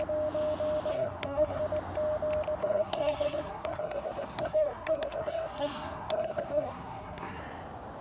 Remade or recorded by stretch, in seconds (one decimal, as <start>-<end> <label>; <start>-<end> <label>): 0.0-0.9 recorded; 0.9-1.6 remade; 1.6-2.6 recorded; 2.6-7.4 remade; 7.4-8.0 recorded